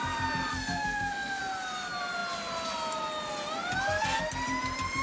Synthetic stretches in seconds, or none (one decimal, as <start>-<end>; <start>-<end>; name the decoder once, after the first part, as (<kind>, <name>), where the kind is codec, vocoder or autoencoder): 0.5-1.4 (codec, SNAC)